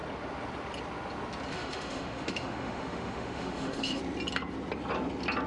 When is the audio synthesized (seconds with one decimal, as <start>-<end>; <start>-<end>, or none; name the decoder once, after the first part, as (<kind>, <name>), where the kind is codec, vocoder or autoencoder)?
1.5-4.0 (autoencoder, DAC-VAE)